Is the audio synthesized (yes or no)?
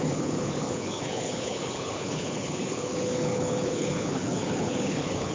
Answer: yes